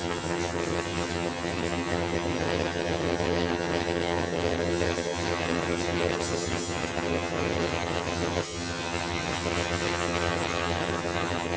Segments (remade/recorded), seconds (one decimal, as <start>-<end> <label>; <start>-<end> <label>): 0.0-11.6 remade